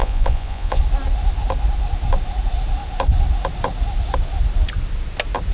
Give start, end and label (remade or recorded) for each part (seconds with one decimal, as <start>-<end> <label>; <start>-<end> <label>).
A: 0.0-0.8 remade; 0.8-5.5 recorded